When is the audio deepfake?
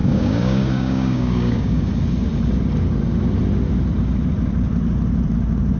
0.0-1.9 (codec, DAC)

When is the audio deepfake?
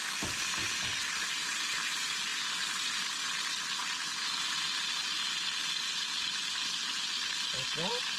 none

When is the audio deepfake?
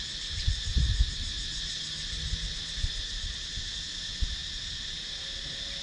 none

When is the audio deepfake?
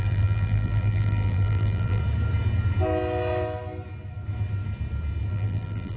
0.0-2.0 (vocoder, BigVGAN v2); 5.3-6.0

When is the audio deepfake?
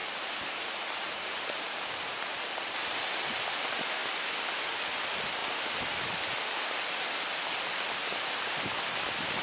0.0-3.0 (vocoder, BigVGAN v2)